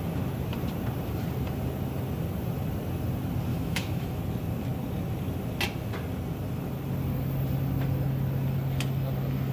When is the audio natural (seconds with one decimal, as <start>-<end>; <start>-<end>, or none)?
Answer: 0.0-3.5; 4.2-9.5